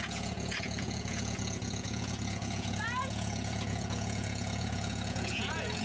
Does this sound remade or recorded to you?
remade